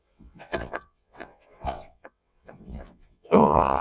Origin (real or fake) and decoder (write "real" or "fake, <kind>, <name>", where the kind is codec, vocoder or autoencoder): fake, vocoder, WaveNeXt